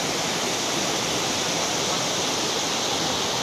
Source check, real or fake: real